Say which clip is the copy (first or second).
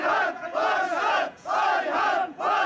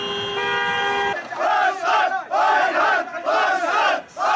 first